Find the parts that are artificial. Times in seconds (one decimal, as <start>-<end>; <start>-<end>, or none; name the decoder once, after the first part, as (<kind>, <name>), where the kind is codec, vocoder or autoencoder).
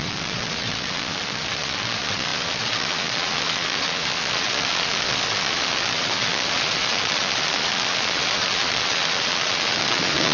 0.0-10.3 (vocoder, Vocos)